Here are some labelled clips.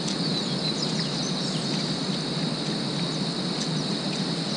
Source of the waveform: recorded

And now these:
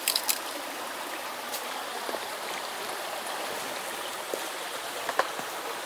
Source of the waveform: recorded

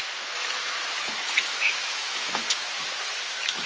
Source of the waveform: remade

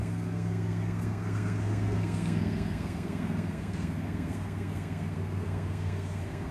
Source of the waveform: remade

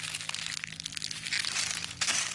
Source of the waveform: recorded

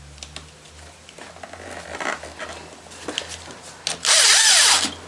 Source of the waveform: recorded